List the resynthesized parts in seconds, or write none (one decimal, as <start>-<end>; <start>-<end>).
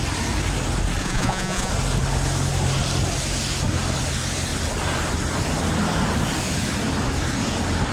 1.0-1.7